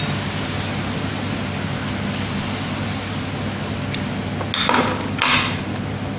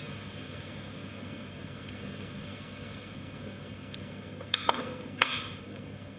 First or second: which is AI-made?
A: second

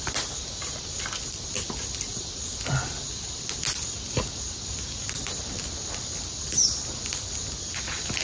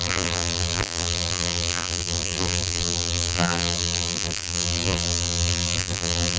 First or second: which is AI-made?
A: second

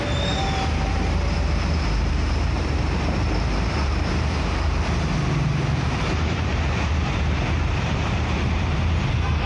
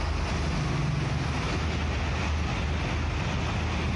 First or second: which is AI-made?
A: first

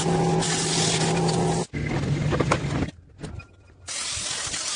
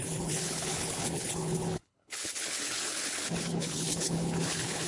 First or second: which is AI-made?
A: second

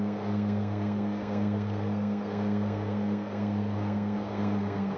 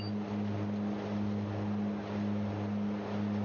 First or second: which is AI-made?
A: first